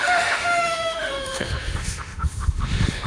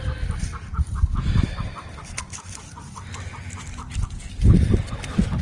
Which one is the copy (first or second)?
first